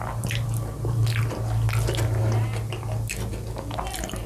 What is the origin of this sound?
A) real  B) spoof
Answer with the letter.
A